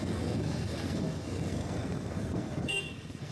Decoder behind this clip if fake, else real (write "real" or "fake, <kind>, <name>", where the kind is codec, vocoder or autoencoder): fake, codec, SNAC